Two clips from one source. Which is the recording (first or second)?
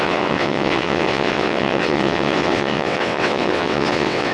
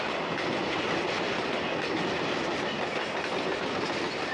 second